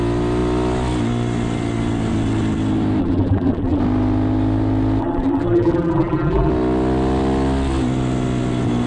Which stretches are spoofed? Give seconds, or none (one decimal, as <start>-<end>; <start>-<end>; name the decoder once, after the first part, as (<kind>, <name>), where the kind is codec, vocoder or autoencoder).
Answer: 3.0-3.8 (vocoder, BigVGAN v2); 5.0-6.5